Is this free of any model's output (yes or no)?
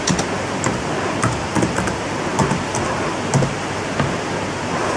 yes